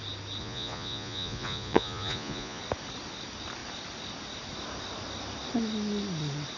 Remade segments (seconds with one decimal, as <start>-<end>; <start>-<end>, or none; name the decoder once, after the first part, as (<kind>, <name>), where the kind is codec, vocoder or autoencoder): 0.4-2.6 (vocoder, Vocos)

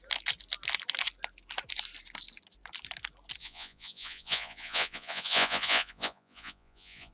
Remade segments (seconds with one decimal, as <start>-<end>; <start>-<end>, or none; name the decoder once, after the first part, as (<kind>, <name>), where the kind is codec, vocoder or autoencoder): 3.4-7.1 (vocoder, Vocos)